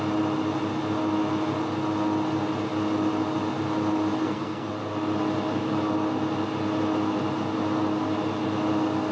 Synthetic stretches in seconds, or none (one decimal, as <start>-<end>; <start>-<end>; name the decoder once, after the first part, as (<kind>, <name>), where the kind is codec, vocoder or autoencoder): 4.2-4.7 (codec, SNAC)